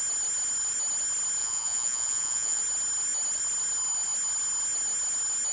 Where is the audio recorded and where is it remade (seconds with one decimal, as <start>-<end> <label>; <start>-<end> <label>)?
0.0-1.4 recorded; 1.4-2.6 remade; 2.6-5.5 recorded